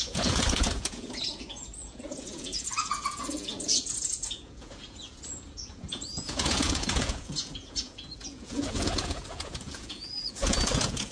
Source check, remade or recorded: remade